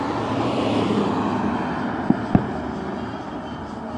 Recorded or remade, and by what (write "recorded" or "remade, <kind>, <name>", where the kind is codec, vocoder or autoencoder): recorded